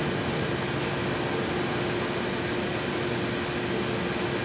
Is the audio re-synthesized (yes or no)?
no